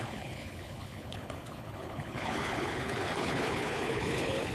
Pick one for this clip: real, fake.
fake